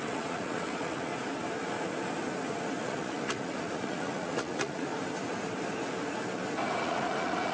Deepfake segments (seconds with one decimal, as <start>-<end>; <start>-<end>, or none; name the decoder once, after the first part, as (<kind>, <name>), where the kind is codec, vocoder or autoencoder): 0.0-1.1 (vocoder, Vocos); 2.8-4.9; 6.8-7.5